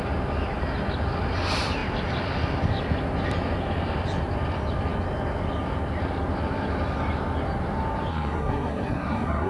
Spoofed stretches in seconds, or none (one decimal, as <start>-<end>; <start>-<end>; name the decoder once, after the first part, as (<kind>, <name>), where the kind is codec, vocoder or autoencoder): 8.1-9.5 (codec, SNAC)